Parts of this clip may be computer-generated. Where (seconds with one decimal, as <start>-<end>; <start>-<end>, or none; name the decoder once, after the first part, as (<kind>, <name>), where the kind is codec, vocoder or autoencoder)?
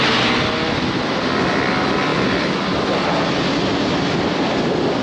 none